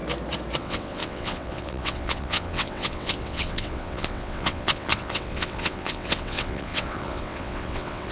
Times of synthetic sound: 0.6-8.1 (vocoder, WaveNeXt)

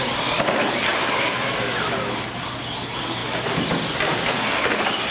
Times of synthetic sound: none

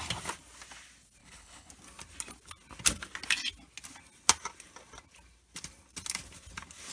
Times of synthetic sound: 1.2-1.7 (codec, HILCodec)

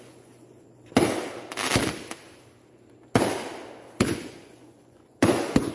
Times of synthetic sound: 0.0-0.7 (vocoder, Vocos); 4.1-5.7